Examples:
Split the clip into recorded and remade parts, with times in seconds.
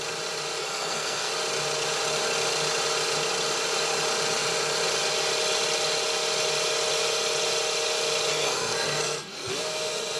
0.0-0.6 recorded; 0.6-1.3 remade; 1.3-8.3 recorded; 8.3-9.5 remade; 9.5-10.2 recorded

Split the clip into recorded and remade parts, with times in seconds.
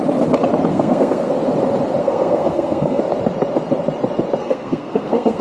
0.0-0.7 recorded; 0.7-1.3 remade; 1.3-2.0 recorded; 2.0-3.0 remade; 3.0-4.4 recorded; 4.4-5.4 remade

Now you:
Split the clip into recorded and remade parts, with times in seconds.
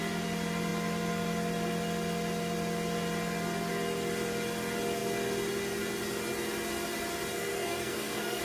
0.0-7.3 recorded; 7.3-8.4 remade